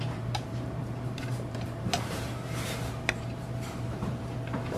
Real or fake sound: fake